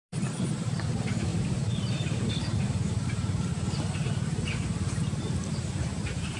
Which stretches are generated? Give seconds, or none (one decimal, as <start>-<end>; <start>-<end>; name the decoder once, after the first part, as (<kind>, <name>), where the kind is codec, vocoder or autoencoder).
0.0-3.5 (vocoder, BigVGAN v2); 5.0-6.4